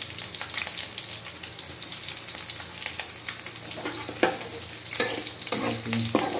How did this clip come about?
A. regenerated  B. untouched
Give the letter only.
B